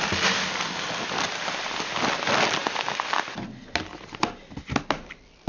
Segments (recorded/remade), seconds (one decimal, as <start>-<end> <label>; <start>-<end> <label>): 0.0-5.5 recorded